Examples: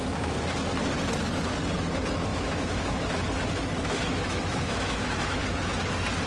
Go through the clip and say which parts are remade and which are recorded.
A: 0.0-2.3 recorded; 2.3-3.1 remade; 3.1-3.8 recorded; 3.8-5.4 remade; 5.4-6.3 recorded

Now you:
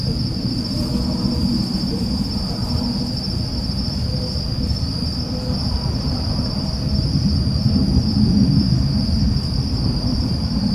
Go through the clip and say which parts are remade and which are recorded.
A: 0.0-1.9 recorded; 1.9-2.4 remade; 2.4-7.6 recorded; 7.6-10.7 remade

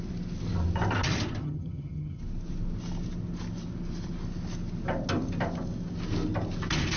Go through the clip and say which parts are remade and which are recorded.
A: 0.0-1.4 recorded; 1.4-2.2 remade; 2.2-7.0 recorded

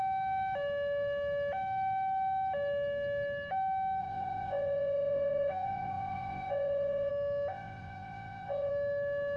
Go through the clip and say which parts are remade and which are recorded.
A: 0.0-4.0 recorded; 4.0-7.1 remade; 7.1-7.5 recorded; 7.5-8.7 remade; 8.7-9.4 recorded

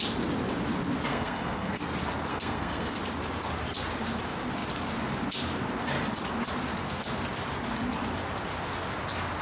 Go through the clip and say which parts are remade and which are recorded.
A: 0.0-1.1 recorded; 1.1-1.8 remade; 1.8-2.3 recorded; 2.3-3.0 remade; 3.0-9.4 recorded

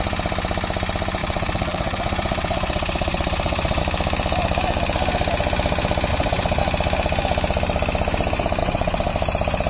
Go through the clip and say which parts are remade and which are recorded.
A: 0.0-1.2 recorded; 1.2-3.8 remade; 3.8-6.1 recorded; 6.1-6.6 remade; 6.6-8.6 recorded; 8.6-9.1 remade; 9.1-9.7 recorded

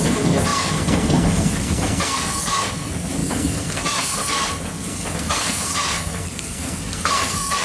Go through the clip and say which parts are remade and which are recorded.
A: 0.0-7.6 remade